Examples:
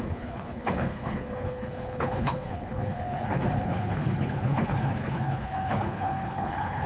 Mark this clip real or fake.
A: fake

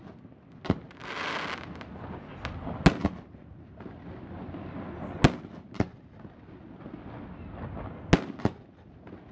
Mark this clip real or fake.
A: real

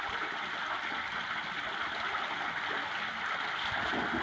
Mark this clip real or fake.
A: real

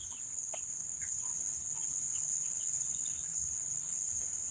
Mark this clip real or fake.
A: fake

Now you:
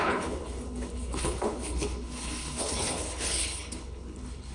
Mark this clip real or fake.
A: fake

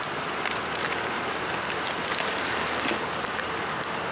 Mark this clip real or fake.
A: real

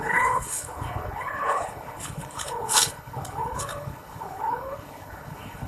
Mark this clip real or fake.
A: fake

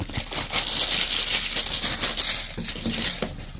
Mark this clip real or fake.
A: real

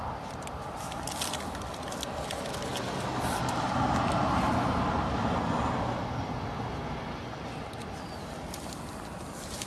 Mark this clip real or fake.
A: real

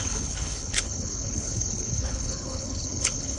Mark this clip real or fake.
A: fake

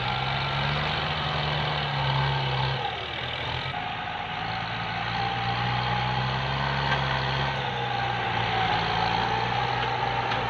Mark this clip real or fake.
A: real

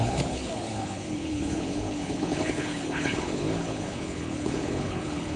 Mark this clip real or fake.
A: fake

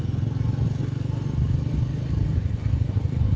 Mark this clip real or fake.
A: real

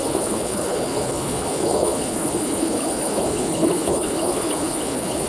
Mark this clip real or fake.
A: fake